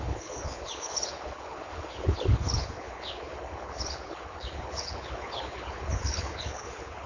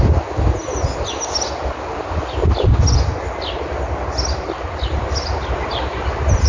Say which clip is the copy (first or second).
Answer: first